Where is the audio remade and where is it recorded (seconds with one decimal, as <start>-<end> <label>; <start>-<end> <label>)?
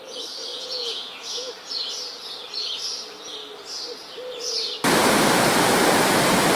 0.0-0.5 recorded; 0.5-1.5 remade; 1.5-6.6 recorded